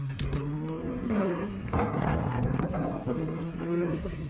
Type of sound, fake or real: fake